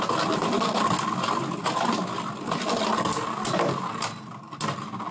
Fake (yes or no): no